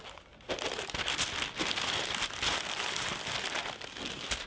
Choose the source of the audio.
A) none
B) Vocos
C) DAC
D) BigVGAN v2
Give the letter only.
A